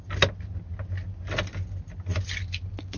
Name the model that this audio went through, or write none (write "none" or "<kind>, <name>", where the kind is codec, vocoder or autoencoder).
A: none